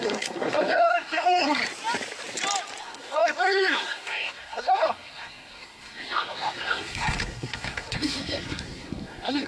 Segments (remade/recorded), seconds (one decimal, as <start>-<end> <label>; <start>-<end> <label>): 0.0-1.6 remade; 1.6-2.8 recorded; 2.8-9.5 remade